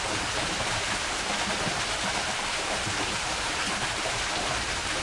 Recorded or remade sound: remade